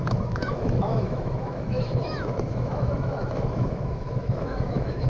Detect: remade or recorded remade